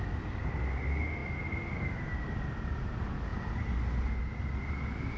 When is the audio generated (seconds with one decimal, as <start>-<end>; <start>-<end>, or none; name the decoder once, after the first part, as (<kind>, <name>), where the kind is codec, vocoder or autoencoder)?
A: none